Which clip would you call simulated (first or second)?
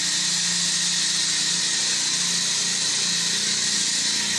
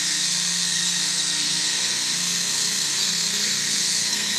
second